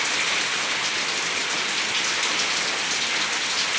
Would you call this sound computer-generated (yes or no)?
no